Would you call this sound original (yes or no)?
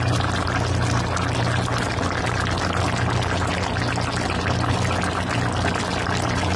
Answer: yes